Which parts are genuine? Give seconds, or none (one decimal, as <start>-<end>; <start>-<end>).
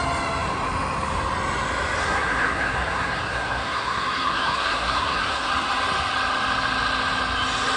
0.0-2.0; 5.5-7.8